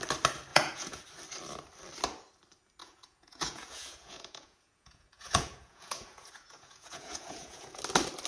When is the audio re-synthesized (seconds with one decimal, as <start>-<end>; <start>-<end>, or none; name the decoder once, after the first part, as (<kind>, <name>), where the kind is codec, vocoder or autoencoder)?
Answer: 0.5-1.0 (vocoder, Vocos); 2.8-7.8